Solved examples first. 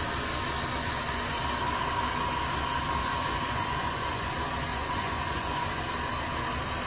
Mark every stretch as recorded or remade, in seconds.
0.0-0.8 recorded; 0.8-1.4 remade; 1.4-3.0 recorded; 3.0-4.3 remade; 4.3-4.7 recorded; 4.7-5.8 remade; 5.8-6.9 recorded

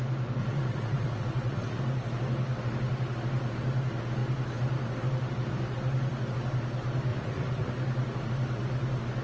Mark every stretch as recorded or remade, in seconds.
0.0-0.4 recorded; 0.4-1.8 remade; 1.8-7.1 recorded; 7.1-7.7 remade; 7.7-9.2 recorded

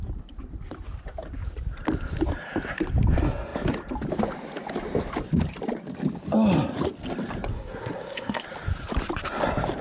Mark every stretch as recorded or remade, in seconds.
0.0-7.5 recorded; 7.5-8.4 remade; 8.4-9.8 recorded

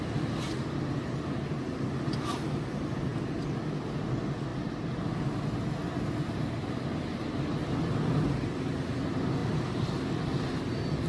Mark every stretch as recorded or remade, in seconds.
0.0-11.1 recorded

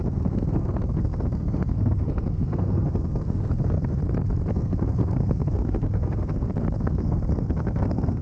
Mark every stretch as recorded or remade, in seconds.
0.0-4.0 remade; 4.0-4.5 recorded; 4.5-8.2 remade

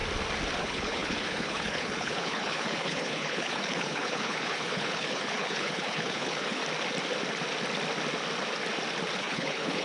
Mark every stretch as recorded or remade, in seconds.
0.0-0.6 recorded; 0.6-6.6 remade; 6.6-9.2 recorded; 9.2-9.8 remade